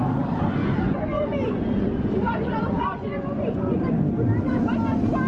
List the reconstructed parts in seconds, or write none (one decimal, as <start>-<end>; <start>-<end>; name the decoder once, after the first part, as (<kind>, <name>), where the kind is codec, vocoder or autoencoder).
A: 0.6-3.8 (vocoder, Vocos)